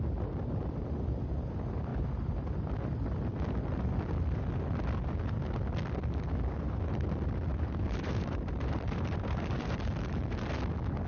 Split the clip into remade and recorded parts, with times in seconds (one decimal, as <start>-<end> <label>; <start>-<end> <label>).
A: 0.0-1.9 recorded; 1.9-2.6 remade; 2.6-7.5 recorded; 7.5-10.5 remade; 10.5-11.1 recorded